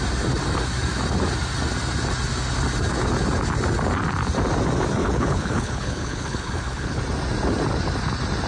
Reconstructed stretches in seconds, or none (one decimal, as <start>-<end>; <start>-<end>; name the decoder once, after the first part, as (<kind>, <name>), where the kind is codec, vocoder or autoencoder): 5.0-7.0 (codec, HILCodec)